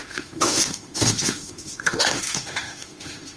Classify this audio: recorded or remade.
remade